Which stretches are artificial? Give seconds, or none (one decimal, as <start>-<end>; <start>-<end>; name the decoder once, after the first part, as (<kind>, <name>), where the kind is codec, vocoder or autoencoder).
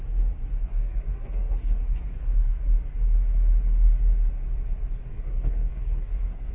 0.6-2.6 (codec, SNAC); 5.1-6.5